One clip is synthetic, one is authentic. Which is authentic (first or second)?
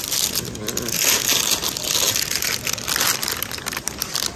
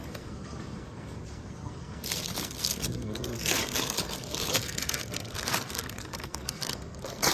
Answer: first